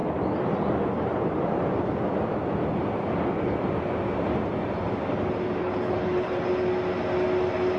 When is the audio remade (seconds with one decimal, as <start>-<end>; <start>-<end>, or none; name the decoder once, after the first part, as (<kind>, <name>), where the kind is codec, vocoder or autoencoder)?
5.6-6.4 (codec, HILCodec)